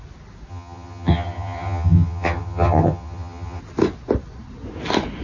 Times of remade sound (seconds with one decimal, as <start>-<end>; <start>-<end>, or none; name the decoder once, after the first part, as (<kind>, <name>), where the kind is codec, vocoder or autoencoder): 0.5-3.6 (vocoder, HiFi-GAN)